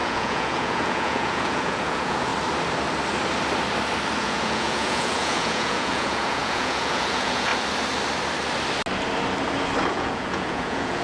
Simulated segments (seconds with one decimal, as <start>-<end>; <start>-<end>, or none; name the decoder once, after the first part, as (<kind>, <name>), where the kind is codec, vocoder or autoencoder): 0.0-2.3 (vocoder, Vocos); 4.2-7.5; 9.9-11.0